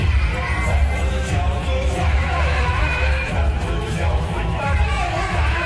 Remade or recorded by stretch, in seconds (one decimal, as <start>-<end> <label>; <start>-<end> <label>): 0.0-1.1 recorded; 1.1-5.7 remade